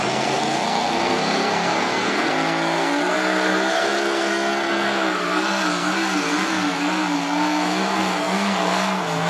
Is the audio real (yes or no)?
no